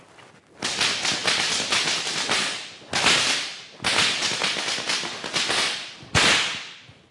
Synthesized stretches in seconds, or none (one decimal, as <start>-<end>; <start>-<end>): none